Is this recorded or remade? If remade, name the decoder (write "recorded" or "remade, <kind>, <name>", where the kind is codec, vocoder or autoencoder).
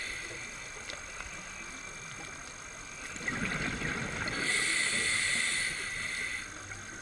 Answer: recorded